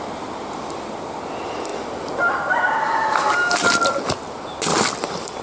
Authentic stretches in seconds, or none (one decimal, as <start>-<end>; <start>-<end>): 0.0-1.7; 2.6-4.7